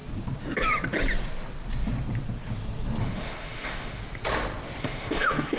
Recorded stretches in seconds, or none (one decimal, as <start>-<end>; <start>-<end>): 0.0-3.0; 4.0-4.8